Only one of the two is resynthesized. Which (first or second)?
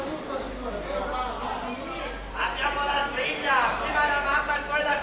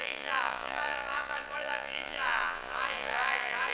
second